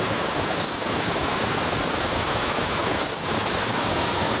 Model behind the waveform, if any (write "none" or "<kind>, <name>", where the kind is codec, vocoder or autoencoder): autoencoder, DAC-VAE